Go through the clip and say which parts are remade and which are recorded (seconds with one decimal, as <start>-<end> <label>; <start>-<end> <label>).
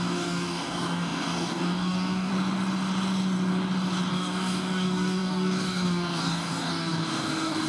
0.0-2.3 remade; 2.3-4.1 recorded; 4.1-7.7 remade